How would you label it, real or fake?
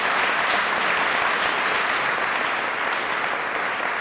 real